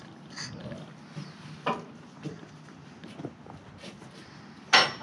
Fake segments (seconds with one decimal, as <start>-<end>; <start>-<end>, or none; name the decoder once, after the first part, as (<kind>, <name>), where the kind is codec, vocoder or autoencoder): none